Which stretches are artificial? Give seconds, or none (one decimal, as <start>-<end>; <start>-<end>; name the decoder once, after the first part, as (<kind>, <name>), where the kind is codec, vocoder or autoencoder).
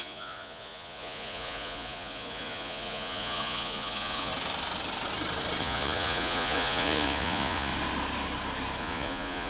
0.0-4.3 (vocoder, Vocos); 5.6-7.7; 8.8-9.5